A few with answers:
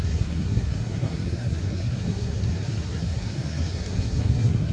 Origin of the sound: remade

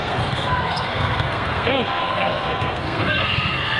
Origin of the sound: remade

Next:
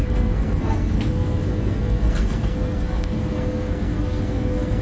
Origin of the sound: remade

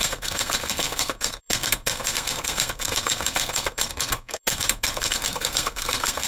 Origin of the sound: remade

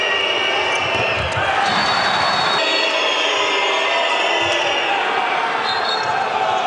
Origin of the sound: recorded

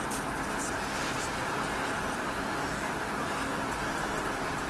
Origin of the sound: recorded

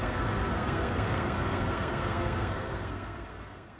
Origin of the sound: remade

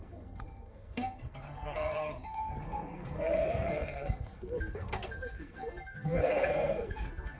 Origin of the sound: remade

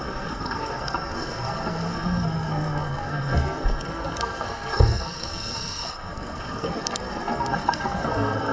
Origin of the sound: remade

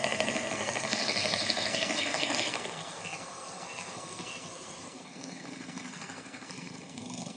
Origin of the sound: remade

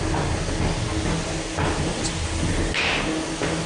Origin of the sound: recorded